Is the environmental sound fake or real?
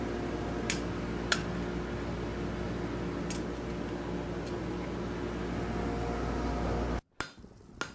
real